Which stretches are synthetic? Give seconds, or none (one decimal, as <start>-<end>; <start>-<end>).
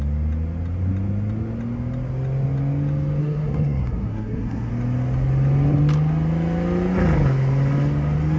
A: 3.2-4.7